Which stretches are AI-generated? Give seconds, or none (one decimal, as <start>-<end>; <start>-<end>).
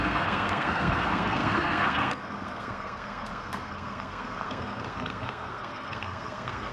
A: 0.0-6.7